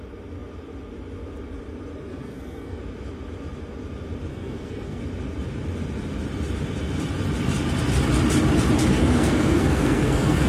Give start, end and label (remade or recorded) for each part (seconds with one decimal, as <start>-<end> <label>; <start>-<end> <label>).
0.0-2.1 recorded; 2.1-2.8 remade; 2.8-4.3 recorded; 4.3-5.0 remade; 5.0-8.9 recorded; 8.9-10.5 remade